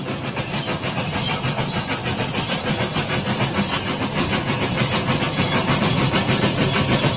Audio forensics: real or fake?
real